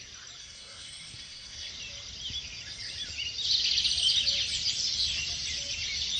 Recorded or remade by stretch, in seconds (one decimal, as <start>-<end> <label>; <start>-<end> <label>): 0.0-0.4 recorded; 0.4-1.7 remade; 1.7-6.2 recorded

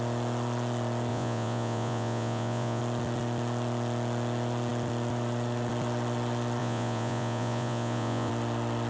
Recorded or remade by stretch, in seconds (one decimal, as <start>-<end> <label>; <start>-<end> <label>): 0.0-1.1 recorded; 1.1-2.8 remade; 2.8-6.6 recorded; 6.6-8.3 remade; 8.3-8.9 recorded

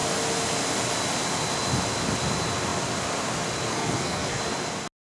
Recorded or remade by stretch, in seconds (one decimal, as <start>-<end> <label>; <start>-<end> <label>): 0.0-3.7 recorded; 3.7-4.4 remade; 4.4-5.1 recorded

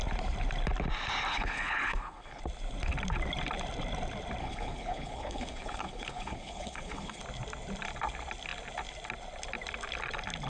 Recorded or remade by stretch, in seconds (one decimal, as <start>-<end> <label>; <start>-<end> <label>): 0.0-1.3 recorded; 1.3-2.4 remade; 2.4-4.4 recorded; 4.4-7.2 remade; 7.2-10.5 recorded

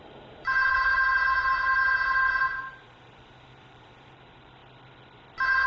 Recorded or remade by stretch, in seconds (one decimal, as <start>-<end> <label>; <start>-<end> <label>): 0.0-0.9 remade; 0.9-2.2 recorded; 2.2-4.6 remade; 4.6-5.7 recorded

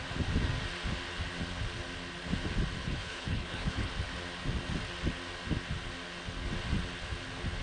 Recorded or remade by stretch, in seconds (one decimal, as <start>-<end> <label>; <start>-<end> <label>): 0.0-2.8 recorded; 2.8-3.9 remade; 3.9-7.6 recorded

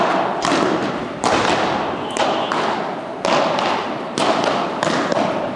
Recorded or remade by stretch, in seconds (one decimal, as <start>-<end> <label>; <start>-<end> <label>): 0.0-5.6 recorded

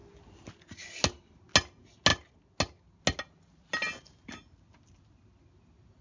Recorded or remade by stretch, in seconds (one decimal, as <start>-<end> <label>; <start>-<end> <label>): 0.0-6.0 recorded